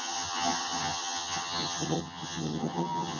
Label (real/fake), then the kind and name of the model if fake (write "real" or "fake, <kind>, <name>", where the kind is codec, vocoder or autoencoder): fake, vocoder, HiFi-GAN